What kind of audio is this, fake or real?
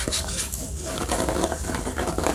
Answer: fake